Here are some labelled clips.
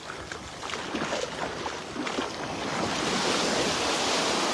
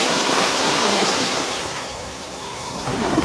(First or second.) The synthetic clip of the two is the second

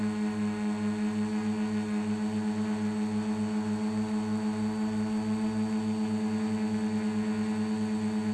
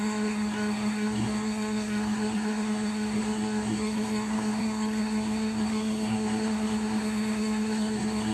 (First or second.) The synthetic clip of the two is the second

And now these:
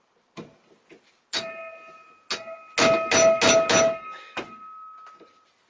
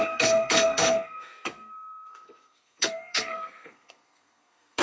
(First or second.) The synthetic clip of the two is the second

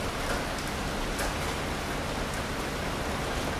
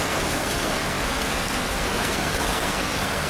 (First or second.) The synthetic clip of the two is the second